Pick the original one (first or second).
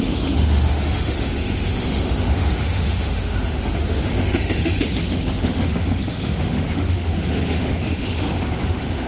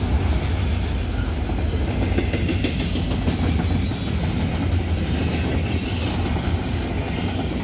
second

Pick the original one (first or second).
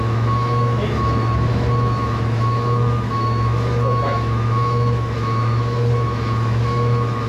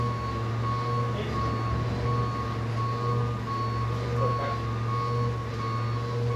second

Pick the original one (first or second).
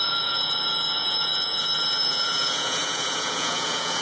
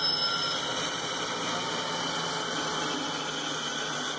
second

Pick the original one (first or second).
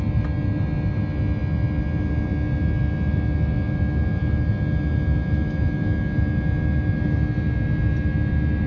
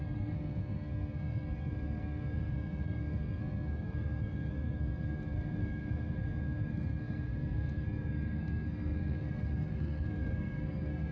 first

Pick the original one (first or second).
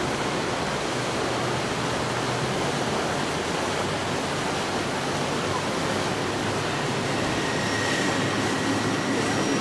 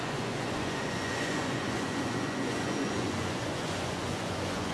first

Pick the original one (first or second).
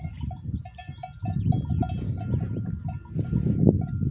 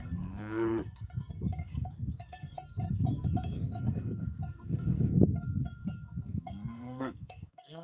first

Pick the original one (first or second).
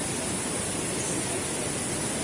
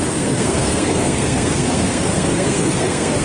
first